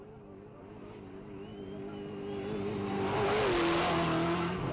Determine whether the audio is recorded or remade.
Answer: recorded